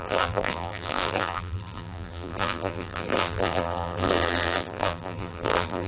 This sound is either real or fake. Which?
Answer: fake